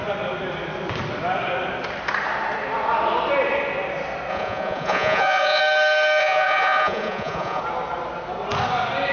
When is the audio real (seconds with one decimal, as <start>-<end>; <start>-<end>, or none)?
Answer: 0.0-4.3; 5.6-6.2; 7.6-9.1